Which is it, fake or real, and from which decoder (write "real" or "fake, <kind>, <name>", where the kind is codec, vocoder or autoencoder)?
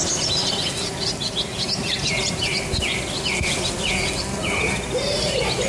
real